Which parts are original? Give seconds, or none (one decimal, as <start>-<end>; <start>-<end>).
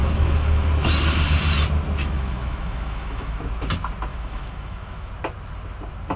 0.7-2.0; 3.4-4.1; 5.1-6.2